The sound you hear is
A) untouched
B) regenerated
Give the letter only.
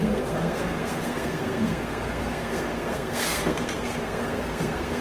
B